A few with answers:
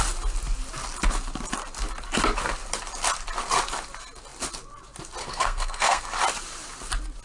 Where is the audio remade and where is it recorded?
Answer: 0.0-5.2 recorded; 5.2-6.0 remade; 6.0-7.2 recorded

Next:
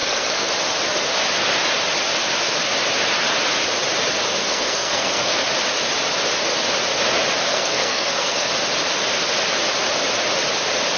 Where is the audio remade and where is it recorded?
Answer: 0.0-0.5 remade; 0.5-4.4 recorded; 4.4-5.4 remade; 5.4-7.5 recorded; 7.5-8.5 remade; 8.5-11.0 recorded

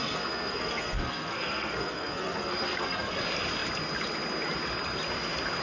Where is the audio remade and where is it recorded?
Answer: 0.0-3.2 remade; 3.2-5.6 recorded

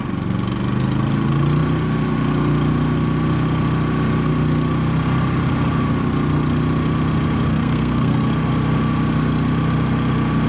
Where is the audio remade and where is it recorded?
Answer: 0.0-7.5 recorded; 7.5-8.3 remade; 8.3-10.5 recorded

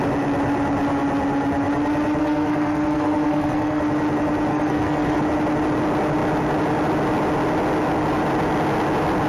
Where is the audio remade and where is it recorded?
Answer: 0.0-2.2 recorded; 2.2-3.8 remade; 3.8-4.5 recorded; 4.5-5.2 remade; 5.2-9.3 recorded

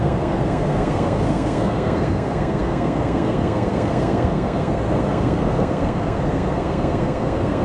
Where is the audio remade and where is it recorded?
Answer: 0.0-7.6 remade

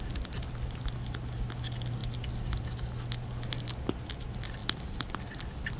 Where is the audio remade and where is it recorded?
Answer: 0.0-5.8 recorded

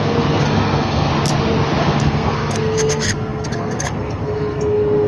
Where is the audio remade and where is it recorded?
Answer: 0.0-1.1 remade; 1.1-1.8 recorded; 1.8-5.1 remade